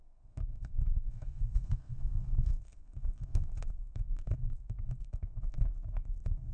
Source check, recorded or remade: remade